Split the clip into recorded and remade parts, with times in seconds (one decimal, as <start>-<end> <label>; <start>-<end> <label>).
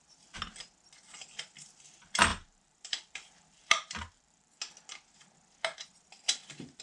0.0-2.3 recorded; 2.3-4.6 remade; 4.6-6.8 recorded